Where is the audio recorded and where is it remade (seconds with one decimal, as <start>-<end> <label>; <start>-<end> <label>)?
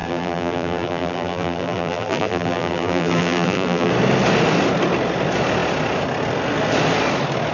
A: 0.0-3.9 remade; 3.9-7.5 recorded